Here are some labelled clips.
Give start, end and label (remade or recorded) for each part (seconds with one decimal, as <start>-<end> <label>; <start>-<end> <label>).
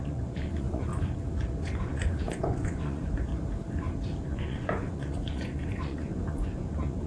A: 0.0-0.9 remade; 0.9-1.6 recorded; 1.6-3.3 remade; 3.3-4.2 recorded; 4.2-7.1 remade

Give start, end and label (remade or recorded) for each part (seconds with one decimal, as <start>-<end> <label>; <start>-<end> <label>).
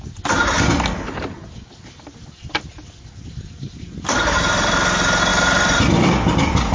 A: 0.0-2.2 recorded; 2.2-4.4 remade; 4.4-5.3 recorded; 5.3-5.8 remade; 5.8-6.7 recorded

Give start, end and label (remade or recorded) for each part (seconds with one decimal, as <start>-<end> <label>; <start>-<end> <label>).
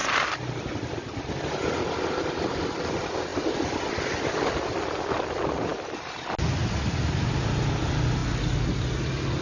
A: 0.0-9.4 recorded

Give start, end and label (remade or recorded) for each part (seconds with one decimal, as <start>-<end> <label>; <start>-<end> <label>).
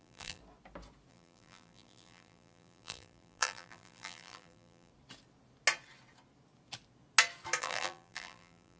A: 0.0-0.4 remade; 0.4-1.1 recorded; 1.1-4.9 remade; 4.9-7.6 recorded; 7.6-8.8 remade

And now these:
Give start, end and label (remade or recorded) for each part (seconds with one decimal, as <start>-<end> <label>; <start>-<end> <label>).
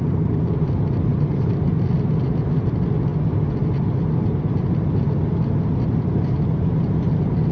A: 0.0-1.1 recorded; 1.1-1.7 remade; 1.7-7.5 recorded